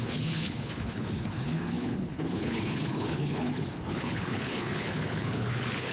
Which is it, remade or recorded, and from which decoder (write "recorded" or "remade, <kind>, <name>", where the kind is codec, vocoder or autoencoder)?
remade, codec, HILCodec